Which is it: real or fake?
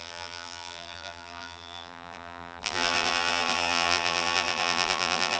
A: fake